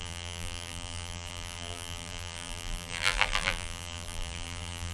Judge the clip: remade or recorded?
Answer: remade